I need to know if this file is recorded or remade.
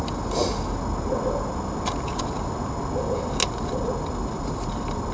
recorded